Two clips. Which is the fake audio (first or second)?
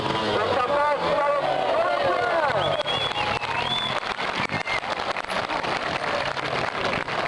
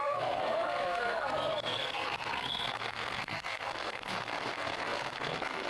second